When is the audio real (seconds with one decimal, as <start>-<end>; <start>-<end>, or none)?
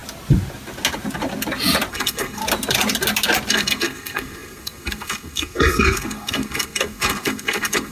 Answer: 0.0-1.9; 2.4-3.5